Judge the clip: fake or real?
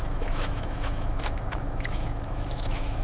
fake